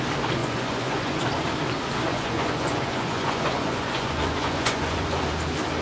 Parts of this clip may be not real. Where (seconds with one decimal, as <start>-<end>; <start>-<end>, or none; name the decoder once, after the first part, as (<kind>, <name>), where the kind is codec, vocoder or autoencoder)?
0.4-1.2 (vocoder, Vocos); 2.1-5.2